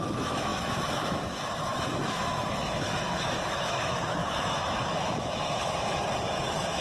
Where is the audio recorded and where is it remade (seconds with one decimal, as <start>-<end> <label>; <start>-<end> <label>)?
0.0-6.8 remade